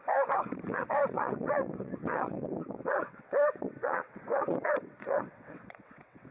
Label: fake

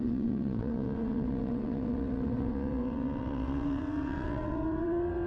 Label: fake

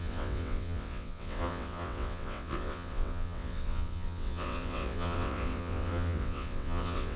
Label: fake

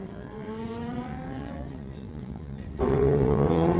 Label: fake